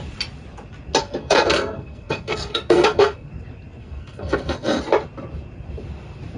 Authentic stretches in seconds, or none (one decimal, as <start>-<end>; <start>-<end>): 0.0-1.0; 3.3-3.8; 4.8-6.4